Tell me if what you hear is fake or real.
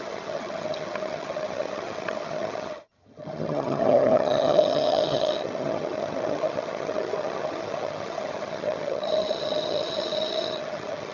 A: fake